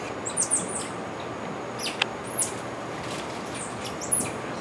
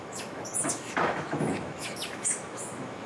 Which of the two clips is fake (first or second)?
second